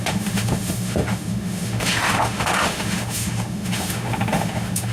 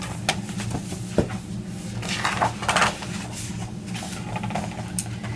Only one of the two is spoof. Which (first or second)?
first